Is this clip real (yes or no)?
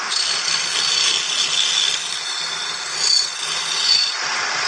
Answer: yes